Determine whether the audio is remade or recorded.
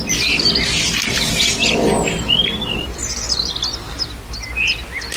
recorded